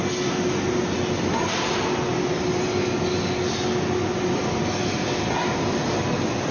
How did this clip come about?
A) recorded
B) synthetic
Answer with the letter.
A